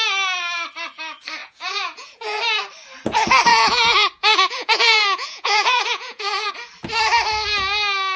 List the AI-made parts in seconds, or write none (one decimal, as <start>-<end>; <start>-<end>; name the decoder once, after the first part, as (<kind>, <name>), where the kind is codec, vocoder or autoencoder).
1.4-2.4 (vocoder, Vocos); 3.5-6.5